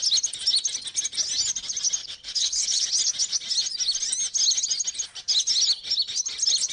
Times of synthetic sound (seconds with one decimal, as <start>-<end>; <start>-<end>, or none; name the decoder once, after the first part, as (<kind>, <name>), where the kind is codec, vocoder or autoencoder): 2.0-2.9 (codec, HILCodec)